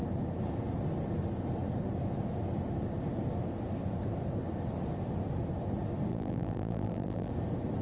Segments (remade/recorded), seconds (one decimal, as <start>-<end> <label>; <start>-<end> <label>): 0.0-6.1 recorded; 6.1-7.3 remade; 7.3-7.8 recorded